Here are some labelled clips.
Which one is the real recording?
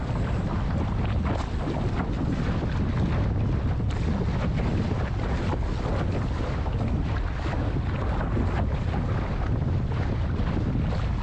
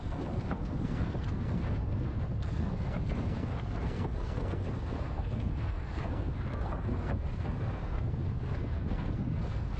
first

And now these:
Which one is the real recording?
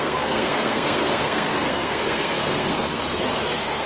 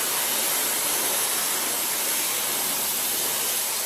second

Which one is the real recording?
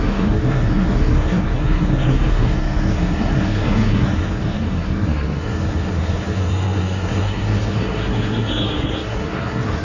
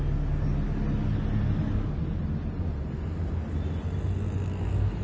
second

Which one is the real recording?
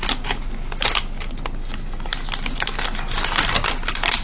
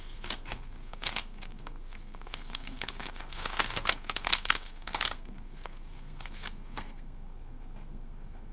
first